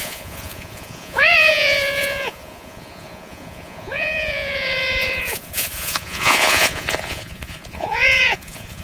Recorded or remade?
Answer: remade